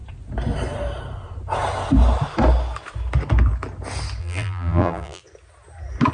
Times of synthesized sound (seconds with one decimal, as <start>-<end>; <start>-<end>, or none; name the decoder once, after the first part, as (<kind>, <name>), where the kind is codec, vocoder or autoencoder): 4.2-5.2 (vocoder, BigVGAN v2)